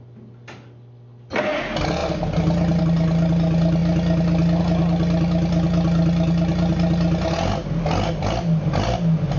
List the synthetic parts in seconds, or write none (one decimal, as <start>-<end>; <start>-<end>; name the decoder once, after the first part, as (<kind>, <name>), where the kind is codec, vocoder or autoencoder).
none